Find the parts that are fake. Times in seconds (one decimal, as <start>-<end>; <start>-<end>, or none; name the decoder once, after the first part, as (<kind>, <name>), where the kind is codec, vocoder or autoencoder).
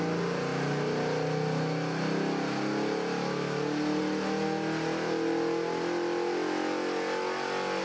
none